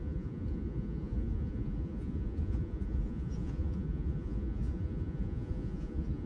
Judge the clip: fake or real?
fake